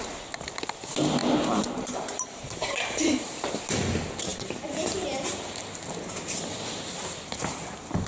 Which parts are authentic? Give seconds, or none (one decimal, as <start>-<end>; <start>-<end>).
0.0-1.2; 3.5-4.3; 5.9-8.1